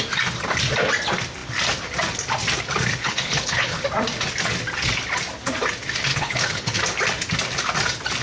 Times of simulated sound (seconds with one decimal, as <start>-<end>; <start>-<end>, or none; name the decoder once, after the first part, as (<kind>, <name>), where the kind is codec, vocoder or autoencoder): 3.0-3.8 (codec, HILCodec); 6.1-6.8